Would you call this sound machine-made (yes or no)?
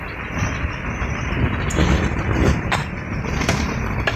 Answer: no